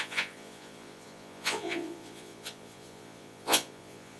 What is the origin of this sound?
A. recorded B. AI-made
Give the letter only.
B